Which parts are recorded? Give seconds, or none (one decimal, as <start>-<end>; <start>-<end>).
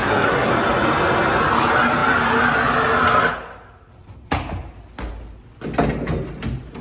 0.5-6.8